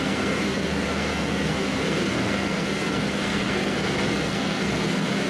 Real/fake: fake